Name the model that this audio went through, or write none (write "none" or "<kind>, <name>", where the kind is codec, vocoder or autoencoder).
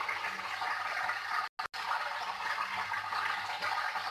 none